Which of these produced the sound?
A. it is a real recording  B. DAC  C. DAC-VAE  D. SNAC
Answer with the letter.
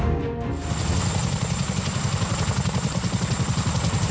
A